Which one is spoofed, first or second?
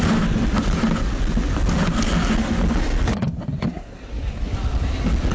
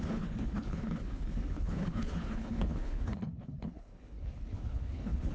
second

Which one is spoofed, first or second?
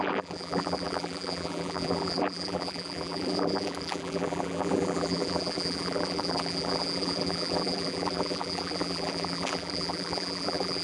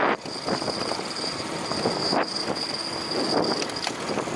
first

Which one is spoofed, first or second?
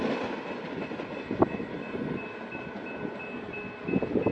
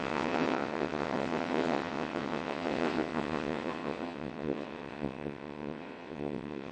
second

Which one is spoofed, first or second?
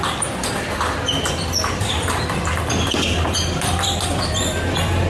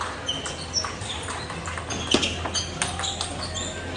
first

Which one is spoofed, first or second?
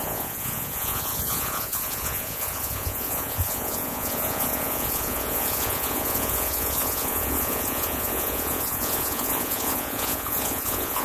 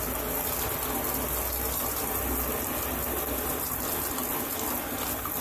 first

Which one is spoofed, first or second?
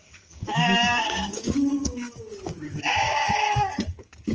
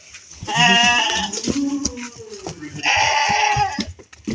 first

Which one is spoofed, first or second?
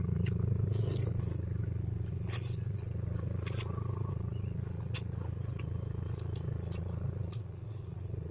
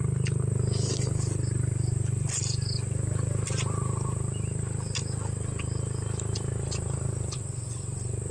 first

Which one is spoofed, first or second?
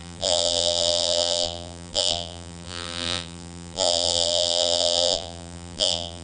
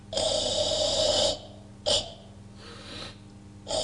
first